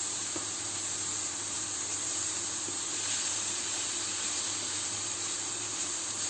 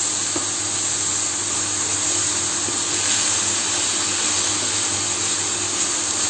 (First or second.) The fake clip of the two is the first